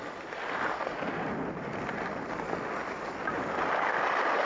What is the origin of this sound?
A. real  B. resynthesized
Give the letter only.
A